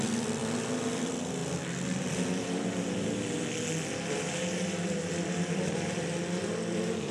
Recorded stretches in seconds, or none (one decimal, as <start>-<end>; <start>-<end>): 0.4-0.9; 1.4-2.0